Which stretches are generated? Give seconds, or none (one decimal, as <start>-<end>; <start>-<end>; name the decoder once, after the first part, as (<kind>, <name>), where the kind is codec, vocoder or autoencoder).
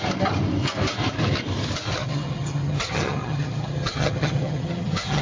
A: 2.0-5.2 (vocoder, HiFi-GAN)